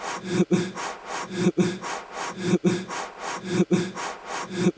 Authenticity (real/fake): real